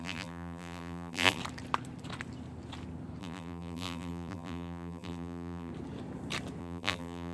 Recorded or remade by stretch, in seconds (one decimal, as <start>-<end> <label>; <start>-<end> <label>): 0.0-1.4 remade; 1.4-3.2 recorded; 3.2-5.7 remade; 5.7-6.6 recorded; 6.6-7.3 remade